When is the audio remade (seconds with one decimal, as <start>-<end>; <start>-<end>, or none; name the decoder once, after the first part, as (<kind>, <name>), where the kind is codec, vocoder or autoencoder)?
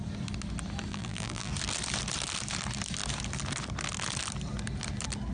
0.9-1.5 (vocoder, BigVGAN v2)